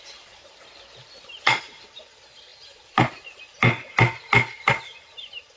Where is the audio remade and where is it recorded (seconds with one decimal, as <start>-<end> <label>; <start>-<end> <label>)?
0.0-5.6 recorded